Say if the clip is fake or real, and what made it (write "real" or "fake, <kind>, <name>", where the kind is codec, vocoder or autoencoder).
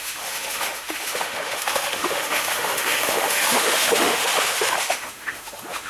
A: fake, autoencoder, DAC-VAE